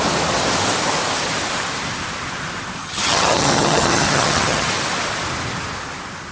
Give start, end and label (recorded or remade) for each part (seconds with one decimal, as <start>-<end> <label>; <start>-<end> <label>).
0.0-2.8 recorded; 2.8-4.7 remade; 4.7-6.3 recorded